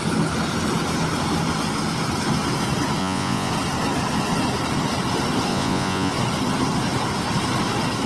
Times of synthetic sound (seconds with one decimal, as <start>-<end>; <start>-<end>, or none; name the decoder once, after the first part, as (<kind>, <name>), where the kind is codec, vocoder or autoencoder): 3.0-3.5 (vocoder, Vocos); 5.5-6.1